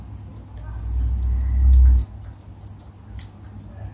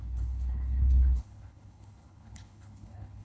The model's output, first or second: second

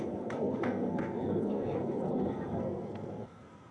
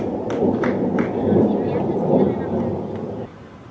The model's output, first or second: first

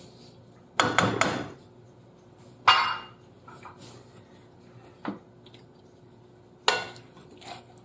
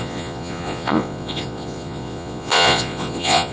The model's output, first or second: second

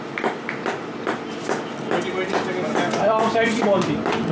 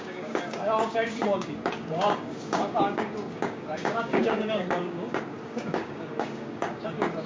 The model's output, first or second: second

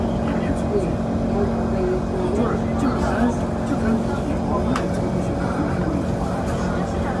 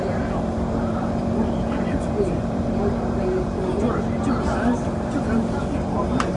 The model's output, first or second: second